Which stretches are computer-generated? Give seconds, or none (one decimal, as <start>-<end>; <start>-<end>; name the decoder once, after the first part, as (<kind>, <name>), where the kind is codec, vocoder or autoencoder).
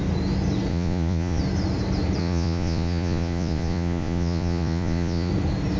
0.7-1.4 (vocoder, Vocos); 2.2-5.3